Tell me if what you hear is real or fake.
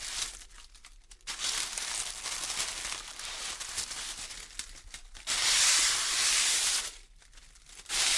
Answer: real